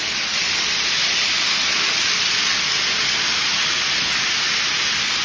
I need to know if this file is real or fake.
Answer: real